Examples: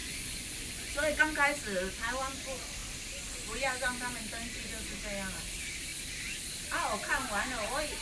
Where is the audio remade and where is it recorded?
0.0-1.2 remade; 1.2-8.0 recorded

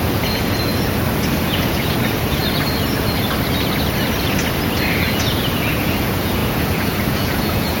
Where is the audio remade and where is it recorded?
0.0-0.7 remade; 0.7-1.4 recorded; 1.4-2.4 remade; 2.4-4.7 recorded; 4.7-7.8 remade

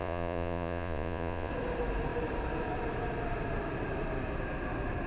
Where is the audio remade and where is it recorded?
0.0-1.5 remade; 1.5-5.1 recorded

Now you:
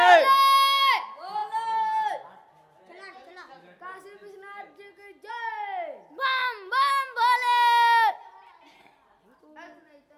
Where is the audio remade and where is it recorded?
0.0-10.2 recorded